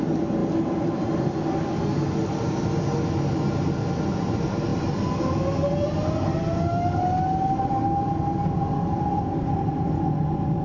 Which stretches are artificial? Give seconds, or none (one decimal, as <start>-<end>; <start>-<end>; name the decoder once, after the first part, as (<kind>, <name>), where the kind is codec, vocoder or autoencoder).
none